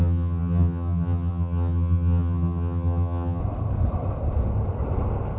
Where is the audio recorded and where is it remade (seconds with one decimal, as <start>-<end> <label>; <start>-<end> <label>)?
0.0-3.4 remade; 3.4-5.4 recorded